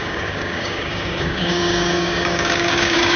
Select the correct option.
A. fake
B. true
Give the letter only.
A